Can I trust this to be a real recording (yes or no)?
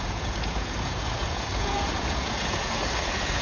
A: no